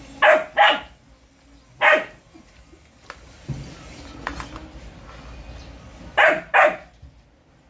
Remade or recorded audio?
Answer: recorded